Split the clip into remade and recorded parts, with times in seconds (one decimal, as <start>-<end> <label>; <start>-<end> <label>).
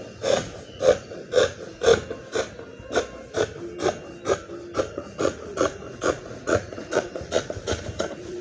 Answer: 0.0-1.9 remade; 1.9-4.8 recorded; 4.8-8.4 remade